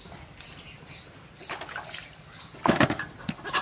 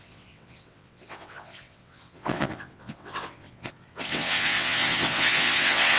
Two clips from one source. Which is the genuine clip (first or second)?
first